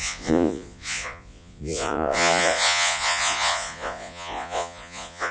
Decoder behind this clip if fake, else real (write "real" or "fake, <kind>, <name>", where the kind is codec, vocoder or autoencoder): fake, vocoder, Vocos